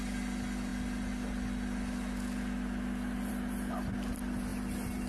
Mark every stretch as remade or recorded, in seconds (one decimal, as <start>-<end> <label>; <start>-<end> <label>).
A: 0.0-5.1 recorded